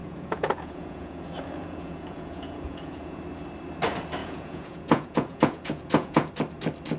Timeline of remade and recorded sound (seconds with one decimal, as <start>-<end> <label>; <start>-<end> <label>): 0.0-3.2 remade; 3.2-4.2 recorded; 4.2-6.3 remade; 6.3-7.0 recorded